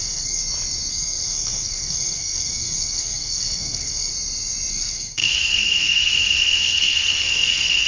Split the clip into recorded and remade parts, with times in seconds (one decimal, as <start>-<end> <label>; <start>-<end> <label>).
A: 0.0-0.4 remade; 0.4-0.9 recorded; 0.9-4.1 remade; 4.1-4.7 recorded; 4.7-7.9 remade